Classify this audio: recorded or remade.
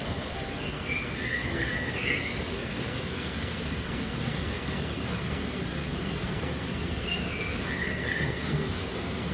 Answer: remade